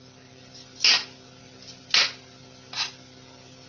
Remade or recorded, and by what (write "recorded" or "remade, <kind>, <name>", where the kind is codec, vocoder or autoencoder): recorded